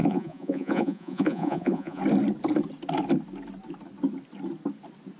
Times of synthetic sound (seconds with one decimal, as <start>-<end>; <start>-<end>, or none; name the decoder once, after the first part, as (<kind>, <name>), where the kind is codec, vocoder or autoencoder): 0.0-2.0 (vocoder, Vocos)